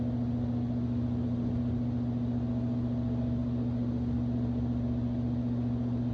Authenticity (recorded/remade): recorded